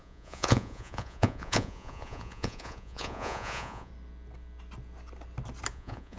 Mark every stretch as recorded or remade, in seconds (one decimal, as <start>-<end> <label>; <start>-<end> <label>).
0.0-3.9 remade; 3.9-5.7 recorded; 5.7-6.2 remade